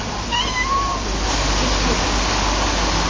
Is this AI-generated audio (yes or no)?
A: no